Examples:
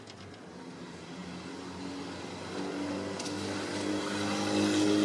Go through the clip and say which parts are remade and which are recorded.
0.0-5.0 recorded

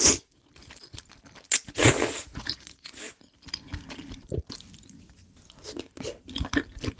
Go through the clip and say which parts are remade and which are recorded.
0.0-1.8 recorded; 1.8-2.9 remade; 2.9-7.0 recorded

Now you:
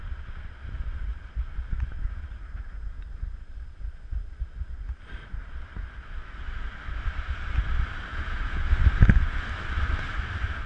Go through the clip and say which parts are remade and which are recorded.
0.0-8.1 recorded; 8.1-8.7 remade; 8.7-10.7 recorded

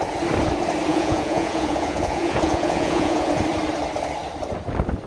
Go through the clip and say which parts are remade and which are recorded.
0.0-0.9 recorded; 0.9-3.4 remade; 3.4-5.1 recorded

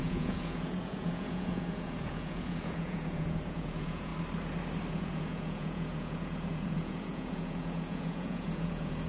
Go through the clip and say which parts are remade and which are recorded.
0.0-4.1 remade; 4.1-4.9 recorded; 4.9-9.1 remade

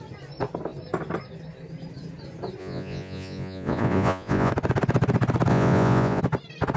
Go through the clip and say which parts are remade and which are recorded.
0.0-2.6 recorded; 2.6-4.5 remade; 4.5-5.5 recorded; 5.5-6.2 remade; 6.2-6.8 recorded

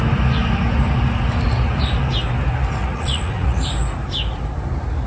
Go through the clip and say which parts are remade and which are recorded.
0.0-2.8 recorded; 2.8-3.6 remade; 3.6-5.1 recorded